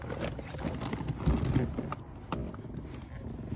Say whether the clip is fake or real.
real